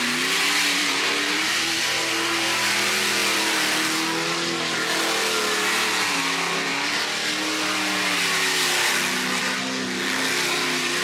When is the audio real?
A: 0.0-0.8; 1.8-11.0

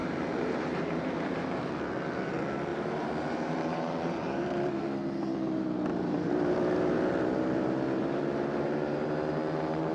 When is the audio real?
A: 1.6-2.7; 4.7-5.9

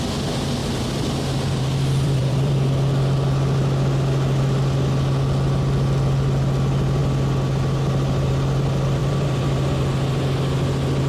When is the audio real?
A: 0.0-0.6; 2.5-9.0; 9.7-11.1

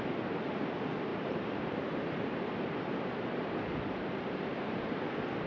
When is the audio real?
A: 0.0-1.1; 4.4-5.5